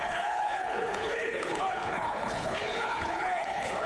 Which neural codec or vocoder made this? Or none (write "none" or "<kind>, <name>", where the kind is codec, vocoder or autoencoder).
codec, HILCodec